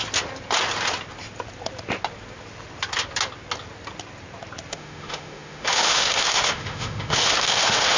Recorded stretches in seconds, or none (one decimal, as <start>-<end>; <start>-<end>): 0.0-4.7